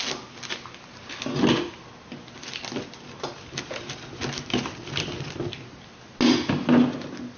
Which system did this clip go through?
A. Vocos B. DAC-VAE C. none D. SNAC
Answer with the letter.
C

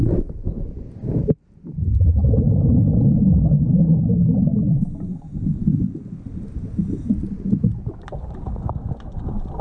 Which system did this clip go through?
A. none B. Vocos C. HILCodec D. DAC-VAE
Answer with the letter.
A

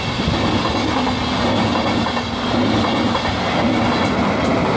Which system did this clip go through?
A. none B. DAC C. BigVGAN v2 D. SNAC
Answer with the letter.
A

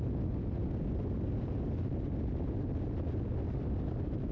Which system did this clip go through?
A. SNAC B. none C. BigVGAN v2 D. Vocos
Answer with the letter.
B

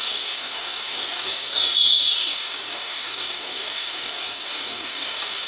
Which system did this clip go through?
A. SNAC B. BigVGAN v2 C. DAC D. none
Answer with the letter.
C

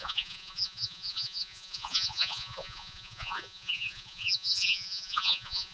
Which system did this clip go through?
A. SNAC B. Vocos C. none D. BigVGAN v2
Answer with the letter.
B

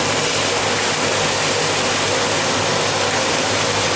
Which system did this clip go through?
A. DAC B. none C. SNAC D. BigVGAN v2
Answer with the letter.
B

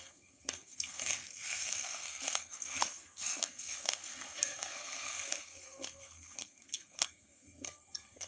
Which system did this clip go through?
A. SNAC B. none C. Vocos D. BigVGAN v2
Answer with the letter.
A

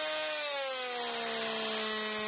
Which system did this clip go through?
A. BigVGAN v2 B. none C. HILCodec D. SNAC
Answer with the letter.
B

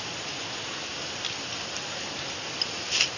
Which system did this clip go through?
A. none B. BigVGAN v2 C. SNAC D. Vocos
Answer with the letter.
A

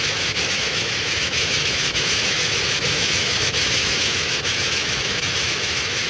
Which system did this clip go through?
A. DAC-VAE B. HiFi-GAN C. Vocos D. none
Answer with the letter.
A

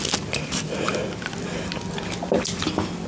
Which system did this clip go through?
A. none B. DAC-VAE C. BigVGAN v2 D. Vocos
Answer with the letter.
A